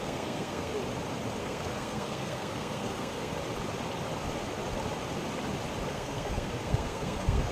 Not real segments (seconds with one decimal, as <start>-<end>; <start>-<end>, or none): 0.0-0.7; 1.4-3.3; 5.9-7.5